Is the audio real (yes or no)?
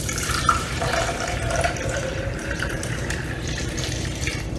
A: no